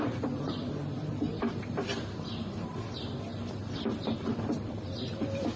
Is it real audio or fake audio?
fake